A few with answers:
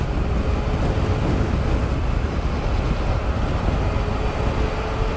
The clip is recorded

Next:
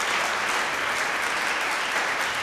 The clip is recorded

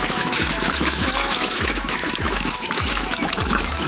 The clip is remade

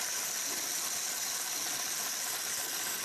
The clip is recorded